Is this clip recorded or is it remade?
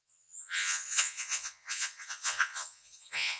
remade